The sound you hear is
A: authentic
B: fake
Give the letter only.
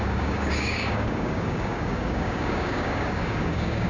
B